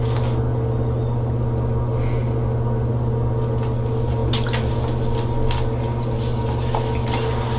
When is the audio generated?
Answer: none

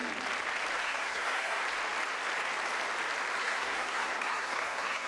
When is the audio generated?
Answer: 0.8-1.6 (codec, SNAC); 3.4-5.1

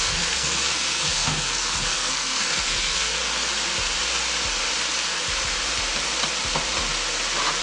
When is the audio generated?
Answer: 0.0-3.2 (codec, SNAC)

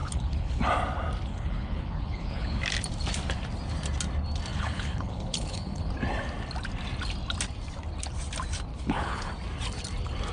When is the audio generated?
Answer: 0.0-0.6 (codec, HILCodec); 1.3-2.6; 4.5-5.9; 8.7-9.3